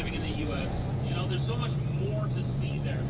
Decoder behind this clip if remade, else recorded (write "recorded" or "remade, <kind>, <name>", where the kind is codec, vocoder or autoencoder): remade, vocoder, Vocos